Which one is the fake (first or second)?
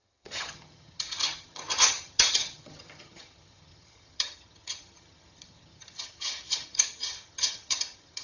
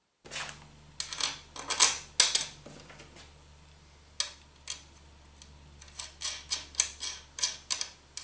first